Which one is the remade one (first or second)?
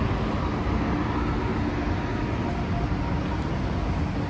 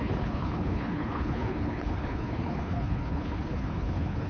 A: second